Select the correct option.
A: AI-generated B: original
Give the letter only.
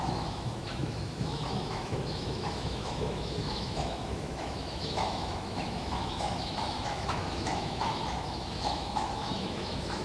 A